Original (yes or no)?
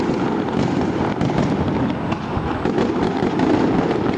yes